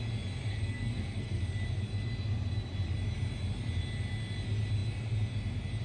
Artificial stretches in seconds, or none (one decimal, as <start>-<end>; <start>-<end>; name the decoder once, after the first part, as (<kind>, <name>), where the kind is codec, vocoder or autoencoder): 0.5-1.4 (codec, SNAC)